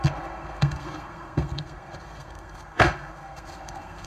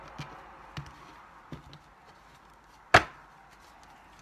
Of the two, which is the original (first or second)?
second